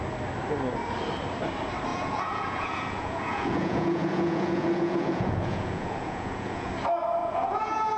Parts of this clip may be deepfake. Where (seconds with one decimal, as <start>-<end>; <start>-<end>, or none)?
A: 1.9-6.7; 7.2-8.0